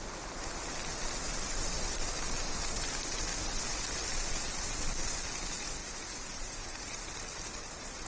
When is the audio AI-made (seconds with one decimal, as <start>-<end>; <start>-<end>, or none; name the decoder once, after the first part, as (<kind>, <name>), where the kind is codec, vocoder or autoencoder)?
5.8-6.8 (vocoder, Vocos)